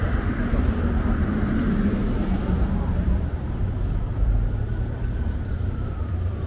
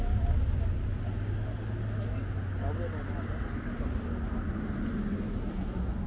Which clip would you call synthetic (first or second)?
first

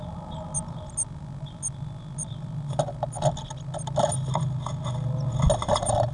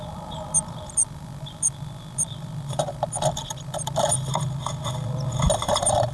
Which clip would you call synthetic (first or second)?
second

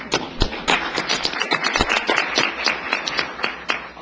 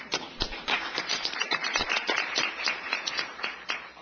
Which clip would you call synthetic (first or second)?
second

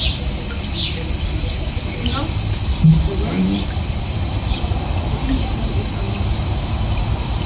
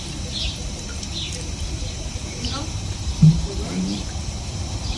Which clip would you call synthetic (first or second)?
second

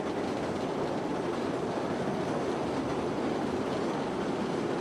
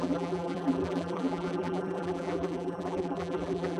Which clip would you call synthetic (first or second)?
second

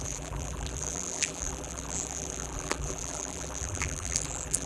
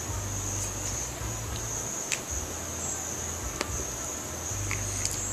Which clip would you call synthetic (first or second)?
first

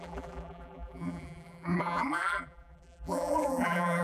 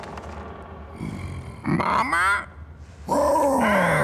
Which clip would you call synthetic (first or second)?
first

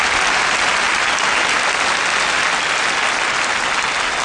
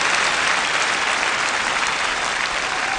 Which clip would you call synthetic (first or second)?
second